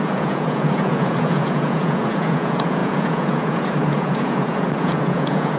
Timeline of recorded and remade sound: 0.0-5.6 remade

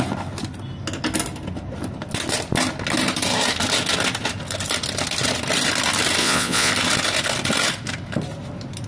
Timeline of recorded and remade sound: 0.0-6.2 recorded; 6.2-6.7 remade; 6.7-8.9 recorded

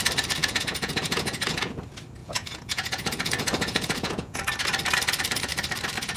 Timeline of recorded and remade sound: 0.0-0.4 recorded; 0.4-1.8 remade; 1.8-2.2 recorded; 2.2-4.4 remade; 4.4-6.2 recorded

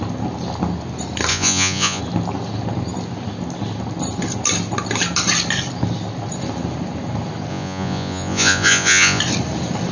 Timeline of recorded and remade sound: 0.0-1.3 recorded; 1.3-2.0 remade; 2.0-7.5 recorded; 7.5-9.2 remade; 9.2-9.9 recorded

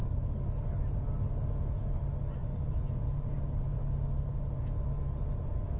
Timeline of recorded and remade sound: 0.0-1.4 recorded; 1.4-2.0 remade; 2.0-2.4 recorded; 2.4-3.8 remade; 3.8-5.8 recorded

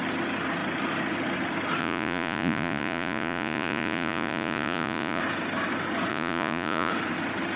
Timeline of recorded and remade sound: 0.0-1.8 recorded; 1.8-5.2 remade; 5.2-6.1 recorded; 6.1-6.9 remade; 6.9-7.6 recorded

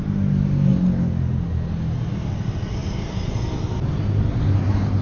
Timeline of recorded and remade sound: 0.0-5.0 recorded

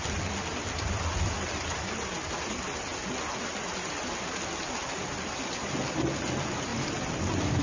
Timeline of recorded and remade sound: 0.0-7.6 recorded